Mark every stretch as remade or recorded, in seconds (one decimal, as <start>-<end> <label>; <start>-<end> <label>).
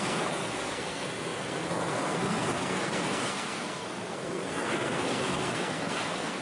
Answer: 0.0-6.4 remade